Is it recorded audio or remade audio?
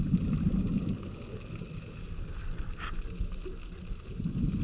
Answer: recorded